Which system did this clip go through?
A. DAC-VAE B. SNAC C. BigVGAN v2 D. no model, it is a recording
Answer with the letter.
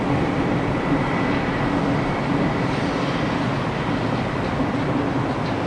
D